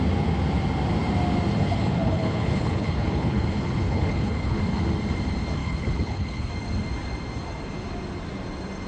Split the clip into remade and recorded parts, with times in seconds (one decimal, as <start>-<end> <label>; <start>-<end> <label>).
0.0-1.5 recorded; 1.5-4.6 remade; 4.6-5.6 recorded; 5.6-6.5 remade; 6.5-8.9 recorded